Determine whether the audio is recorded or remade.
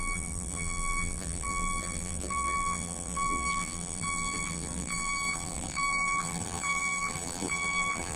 remade